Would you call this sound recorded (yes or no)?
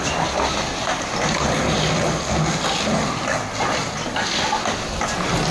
yes